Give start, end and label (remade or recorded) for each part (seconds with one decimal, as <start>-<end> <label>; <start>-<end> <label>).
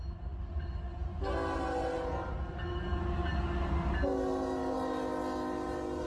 0.0-6.1 recorded